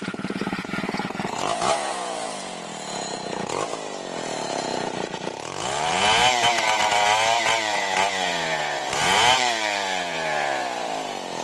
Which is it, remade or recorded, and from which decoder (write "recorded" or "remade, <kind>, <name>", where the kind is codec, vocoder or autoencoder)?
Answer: remade, vocoder, Vocos